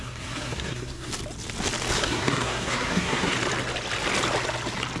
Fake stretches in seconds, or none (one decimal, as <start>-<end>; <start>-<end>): 0.0-1.1; 2.0-3.3